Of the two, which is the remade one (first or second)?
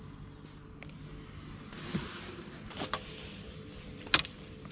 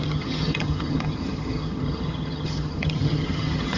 second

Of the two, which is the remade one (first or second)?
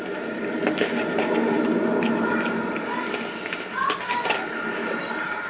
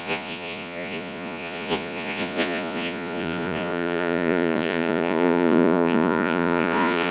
second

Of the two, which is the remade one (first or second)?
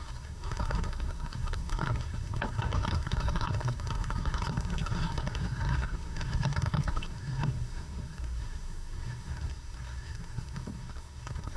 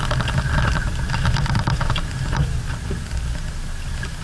first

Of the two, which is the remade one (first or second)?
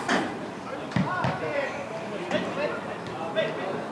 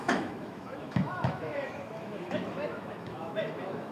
second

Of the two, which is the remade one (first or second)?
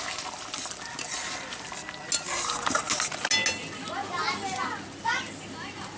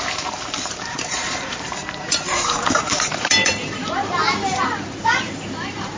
second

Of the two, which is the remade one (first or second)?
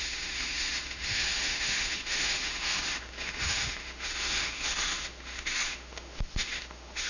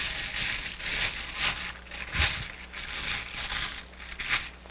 first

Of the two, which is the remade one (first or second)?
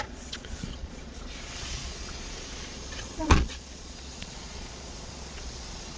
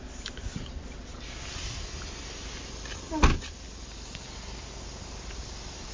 first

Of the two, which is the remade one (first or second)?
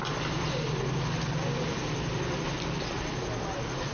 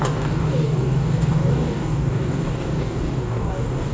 second